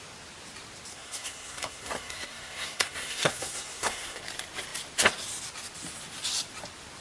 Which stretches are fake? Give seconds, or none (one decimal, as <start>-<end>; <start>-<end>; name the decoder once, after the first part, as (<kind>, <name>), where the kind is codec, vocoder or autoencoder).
0.9-4.2 (codec, SNAC)

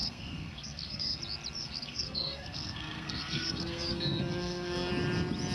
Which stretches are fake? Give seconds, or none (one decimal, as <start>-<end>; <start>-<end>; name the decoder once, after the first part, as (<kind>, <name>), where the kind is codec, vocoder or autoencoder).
0.0-1.2 (codec, SNAC); 1.6-4.9